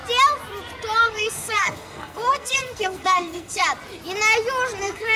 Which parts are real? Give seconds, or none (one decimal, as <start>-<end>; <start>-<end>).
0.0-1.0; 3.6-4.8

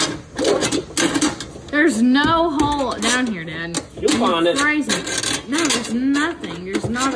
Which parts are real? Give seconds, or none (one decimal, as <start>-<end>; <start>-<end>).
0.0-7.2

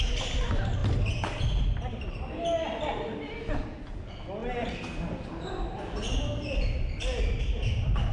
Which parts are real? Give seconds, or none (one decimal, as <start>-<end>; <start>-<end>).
0.0-8.1

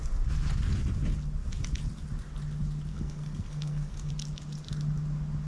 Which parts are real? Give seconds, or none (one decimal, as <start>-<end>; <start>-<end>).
0.0-2.9; 4.1-5.5